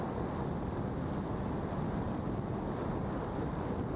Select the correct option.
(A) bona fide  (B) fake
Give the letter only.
A